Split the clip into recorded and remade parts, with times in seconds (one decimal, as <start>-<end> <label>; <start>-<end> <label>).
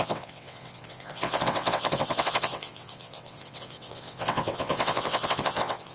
0.0-5.9 remade